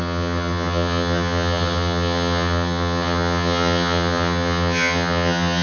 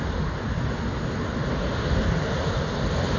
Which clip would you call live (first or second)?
second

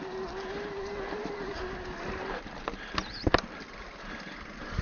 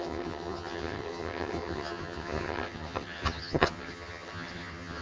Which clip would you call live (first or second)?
first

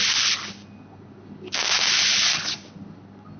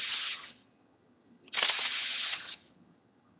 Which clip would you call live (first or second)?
first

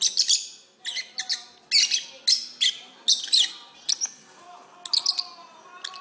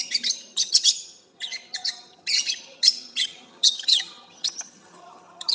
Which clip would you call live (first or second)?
first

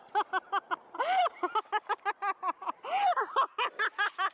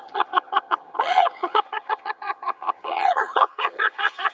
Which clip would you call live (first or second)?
first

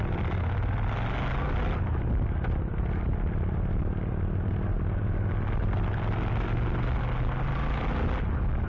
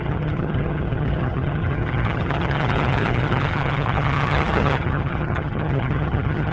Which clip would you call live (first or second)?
first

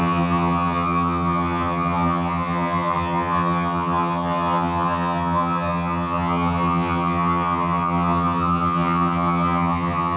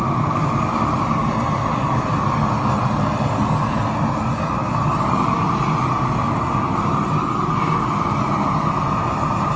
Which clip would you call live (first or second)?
second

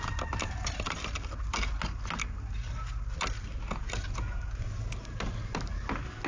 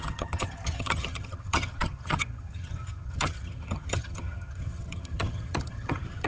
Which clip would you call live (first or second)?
first